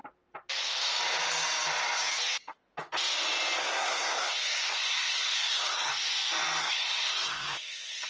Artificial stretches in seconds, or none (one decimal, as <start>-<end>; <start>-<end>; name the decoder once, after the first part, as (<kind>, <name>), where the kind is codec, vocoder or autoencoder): 3.6-5.9 (codec, SNAC); 6.6-8.1

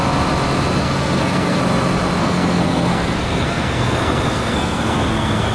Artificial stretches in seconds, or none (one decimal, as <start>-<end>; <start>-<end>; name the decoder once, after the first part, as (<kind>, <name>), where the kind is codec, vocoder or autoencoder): 0.8-1.6 (codec, SNAC); 2.2-5.5